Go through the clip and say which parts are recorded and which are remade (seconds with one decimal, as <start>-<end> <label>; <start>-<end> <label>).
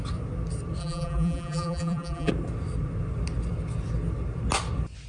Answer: 0.0-0.8 recorded; 0.8-2.3 remade; 2.3-5.1 recorded